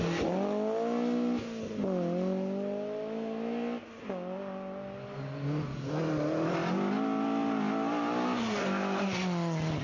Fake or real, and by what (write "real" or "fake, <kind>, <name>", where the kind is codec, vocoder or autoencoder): real